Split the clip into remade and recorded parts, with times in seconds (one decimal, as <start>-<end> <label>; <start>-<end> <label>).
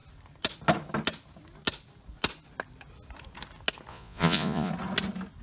0.0-3.9 recorded; 3.9-4.7 remade; 4.7-5.4 recorded